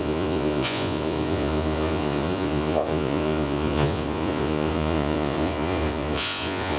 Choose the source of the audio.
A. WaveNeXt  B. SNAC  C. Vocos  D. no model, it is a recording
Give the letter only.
C